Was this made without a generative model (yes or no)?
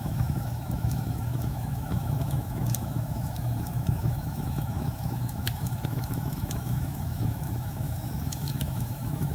no